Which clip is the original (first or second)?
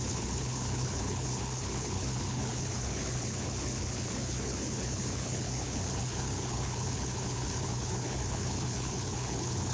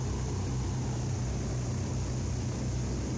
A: second